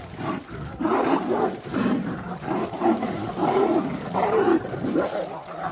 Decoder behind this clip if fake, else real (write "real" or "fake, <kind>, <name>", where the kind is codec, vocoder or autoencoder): fake, vocoder, BigVGAN v2